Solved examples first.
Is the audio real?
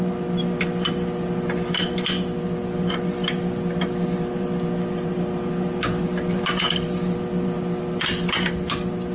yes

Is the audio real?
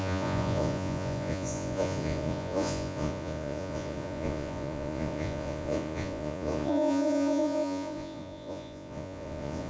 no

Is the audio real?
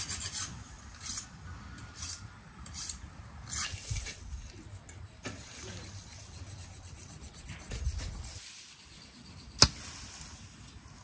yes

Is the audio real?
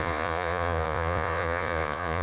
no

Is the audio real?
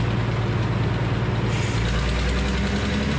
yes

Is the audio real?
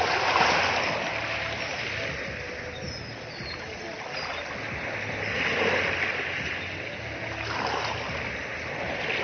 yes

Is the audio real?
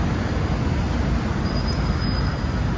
yes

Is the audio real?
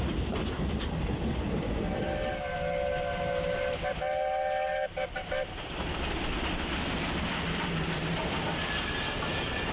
yes